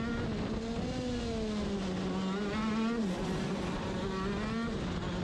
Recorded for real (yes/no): yes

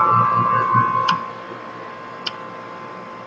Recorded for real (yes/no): yes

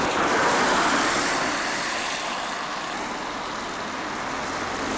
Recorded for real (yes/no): yes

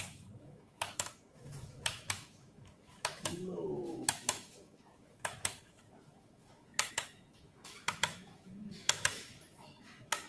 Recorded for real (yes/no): no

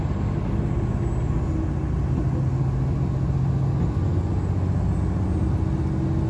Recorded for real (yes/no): yes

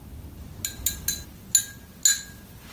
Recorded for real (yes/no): yes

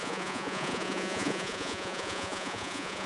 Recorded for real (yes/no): no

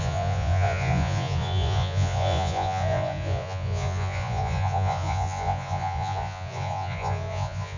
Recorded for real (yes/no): no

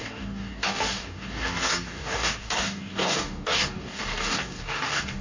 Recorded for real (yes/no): no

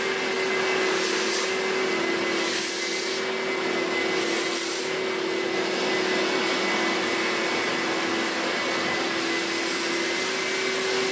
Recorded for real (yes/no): yes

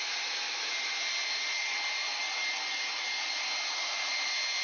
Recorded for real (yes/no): yes